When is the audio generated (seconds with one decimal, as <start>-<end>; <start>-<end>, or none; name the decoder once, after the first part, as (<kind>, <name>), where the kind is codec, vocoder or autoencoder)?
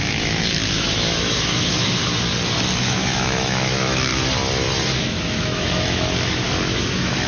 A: 0.0-2.1 (autoencoder, DAC-VAE); 2.8-4.1; 5.0-7.3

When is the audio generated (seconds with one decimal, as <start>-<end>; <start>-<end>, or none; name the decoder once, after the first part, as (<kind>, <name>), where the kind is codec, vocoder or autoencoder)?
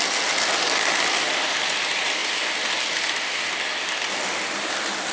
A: none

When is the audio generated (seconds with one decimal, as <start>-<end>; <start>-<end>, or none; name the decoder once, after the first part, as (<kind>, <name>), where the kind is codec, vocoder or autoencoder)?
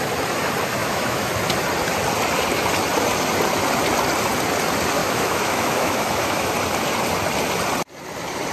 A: 0.8-1.3 (autoencoder, DAC-VAE); 5.0-6.5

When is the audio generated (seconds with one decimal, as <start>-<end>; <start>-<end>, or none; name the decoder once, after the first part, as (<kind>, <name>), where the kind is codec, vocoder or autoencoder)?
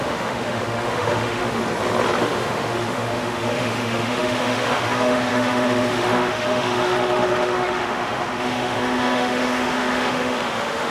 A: 0.0-1.6 (autoencoder, DAC-VAE); 2.2-10.9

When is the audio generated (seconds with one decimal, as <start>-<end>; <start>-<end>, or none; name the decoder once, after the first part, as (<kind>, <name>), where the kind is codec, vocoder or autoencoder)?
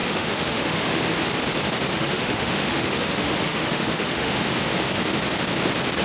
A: 0.0-1.0 (autoencoder, DAC-VAE); 1.9-4.4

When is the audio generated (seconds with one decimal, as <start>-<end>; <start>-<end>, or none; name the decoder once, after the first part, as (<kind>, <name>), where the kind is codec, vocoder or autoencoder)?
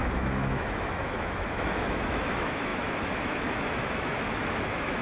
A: 0.0-5.0 (autoencoder, DAC-VAE)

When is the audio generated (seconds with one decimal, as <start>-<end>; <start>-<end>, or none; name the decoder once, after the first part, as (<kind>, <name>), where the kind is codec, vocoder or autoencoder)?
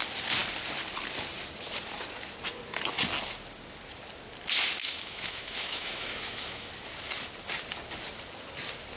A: 4.8-6.7 (autoencoder, DAC-VAE)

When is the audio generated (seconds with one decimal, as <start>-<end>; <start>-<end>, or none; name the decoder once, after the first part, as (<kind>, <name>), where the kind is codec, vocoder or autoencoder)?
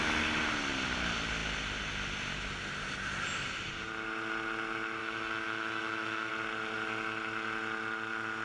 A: 5.0-6.3 (autoencoder, DAC-VAE)